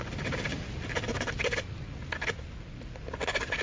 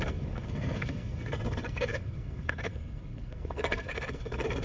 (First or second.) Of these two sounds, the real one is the first